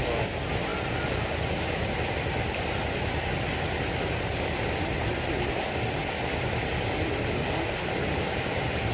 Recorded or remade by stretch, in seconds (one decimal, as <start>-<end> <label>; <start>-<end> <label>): 0.0-8.9 recorded